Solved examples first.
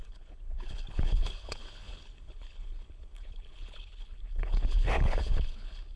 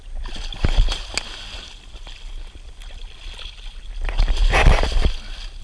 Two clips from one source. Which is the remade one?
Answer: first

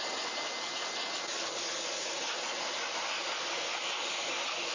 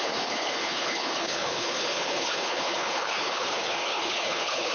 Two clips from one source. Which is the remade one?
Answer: second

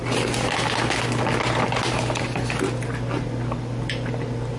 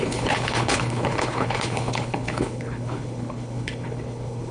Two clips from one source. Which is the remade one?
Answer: second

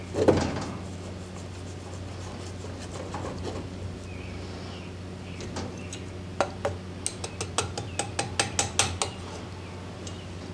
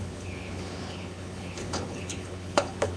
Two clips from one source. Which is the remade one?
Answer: second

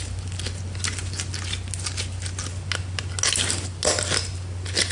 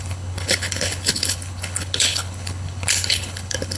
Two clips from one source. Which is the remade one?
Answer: second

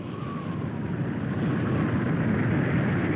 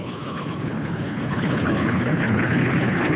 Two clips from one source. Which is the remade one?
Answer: second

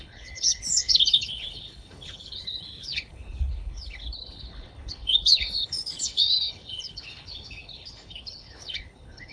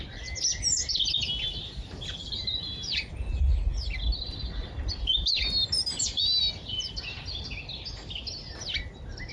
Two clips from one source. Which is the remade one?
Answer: first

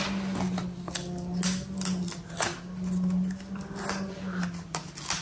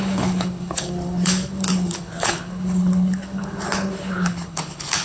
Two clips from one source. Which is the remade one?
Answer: second